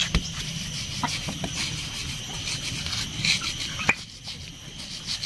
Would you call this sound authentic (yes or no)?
yes